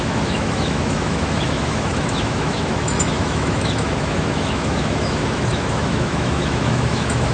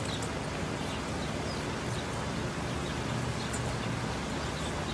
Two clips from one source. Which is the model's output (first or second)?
first